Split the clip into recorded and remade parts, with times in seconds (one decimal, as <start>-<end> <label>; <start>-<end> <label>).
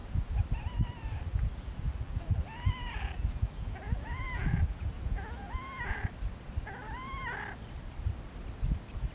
0.0-1.3 recorded; 1.3-6.1 remade; 6.1-9.1 recorded